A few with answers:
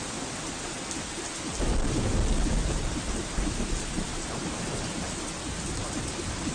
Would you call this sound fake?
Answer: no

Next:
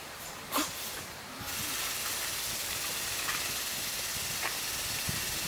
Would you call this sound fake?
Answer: no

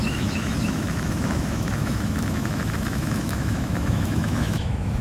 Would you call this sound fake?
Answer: yes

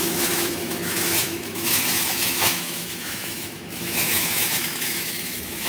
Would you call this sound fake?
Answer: yes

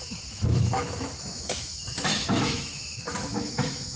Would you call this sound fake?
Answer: yes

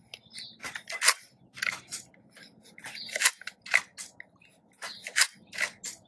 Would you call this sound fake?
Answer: no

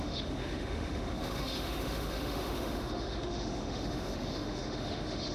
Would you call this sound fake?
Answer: yes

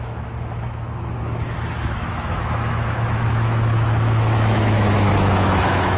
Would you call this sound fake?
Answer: yes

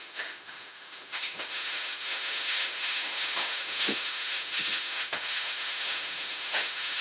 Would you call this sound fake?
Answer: yes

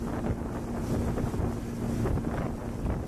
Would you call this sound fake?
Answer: no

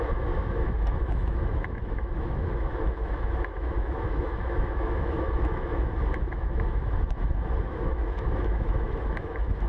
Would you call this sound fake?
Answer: yes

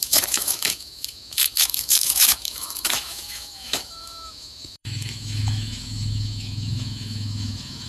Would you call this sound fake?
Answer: yes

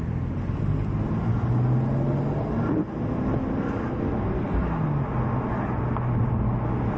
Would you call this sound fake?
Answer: no